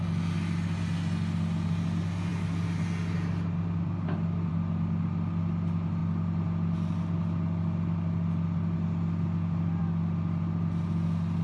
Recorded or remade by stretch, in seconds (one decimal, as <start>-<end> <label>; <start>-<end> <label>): 0.0-11.4 recorded